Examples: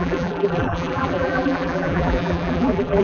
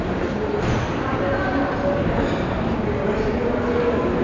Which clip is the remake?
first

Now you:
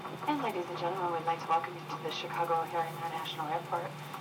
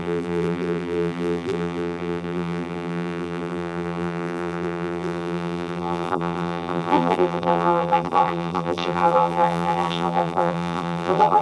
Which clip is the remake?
second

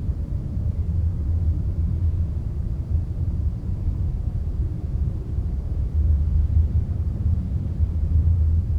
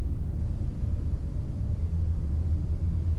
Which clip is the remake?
first